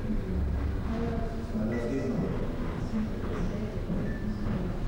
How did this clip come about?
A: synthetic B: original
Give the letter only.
B